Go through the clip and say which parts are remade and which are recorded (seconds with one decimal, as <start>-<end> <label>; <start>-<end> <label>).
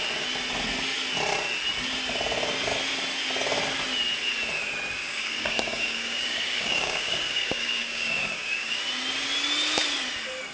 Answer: 0.0-5.0 recorded; 5.0-8.8 remade; 8.8-10.5 recorded